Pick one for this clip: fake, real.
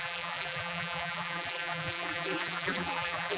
fake